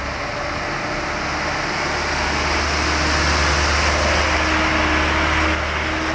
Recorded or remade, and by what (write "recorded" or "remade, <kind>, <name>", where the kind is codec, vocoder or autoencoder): recorded